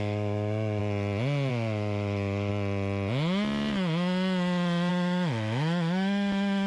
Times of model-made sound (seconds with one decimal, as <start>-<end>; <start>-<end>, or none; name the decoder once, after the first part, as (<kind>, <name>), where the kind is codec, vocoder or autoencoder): 0.0-0.8 (autoencoder, DAC-VAE); 1.5-2.5; 4.9-6.7